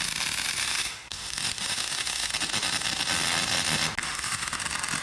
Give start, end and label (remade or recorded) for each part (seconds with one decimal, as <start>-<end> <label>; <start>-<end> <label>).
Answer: 0.0-0.6 recorded; 0.6-2.3 remade; 2.3-4.0 recorded; 4.0-4.6 remade; 4.6-5.0 recorded